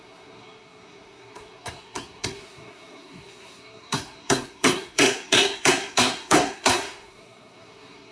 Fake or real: fake